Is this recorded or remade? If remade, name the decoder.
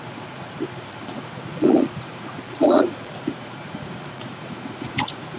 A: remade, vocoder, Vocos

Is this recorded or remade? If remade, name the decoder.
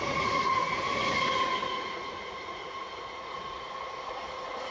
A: remade, vocoder, Vocos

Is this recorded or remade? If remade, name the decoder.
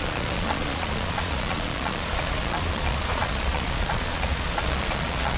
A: remade, vocoder, Vocos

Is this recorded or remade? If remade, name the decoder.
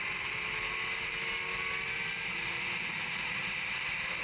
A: recorded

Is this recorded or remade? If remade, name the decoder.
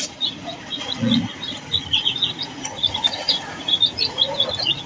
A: remade, vocoder, Vocos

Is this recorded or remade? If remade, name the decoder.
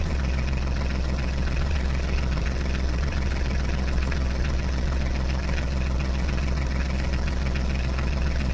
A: remade, vocoder, Vocos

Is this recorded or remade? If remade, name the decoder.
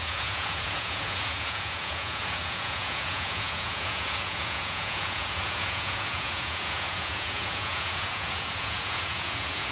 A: remade, vocoder, Vocos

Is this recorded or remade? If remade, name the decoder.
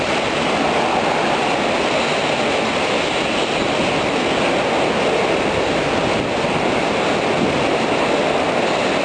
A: recorded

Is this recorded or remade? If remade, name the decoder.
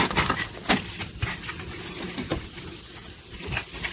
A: recorded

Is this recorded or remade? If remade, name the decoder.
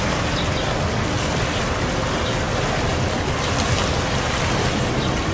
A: recorded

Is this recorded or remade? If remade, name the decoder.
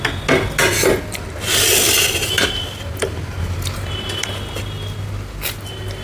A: recorded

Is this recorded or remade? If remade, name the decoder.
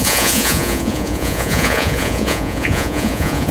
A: remade, vocoder, Vocos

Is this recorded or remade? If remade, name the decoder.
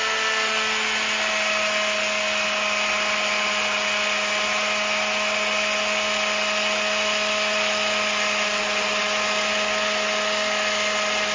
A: recorded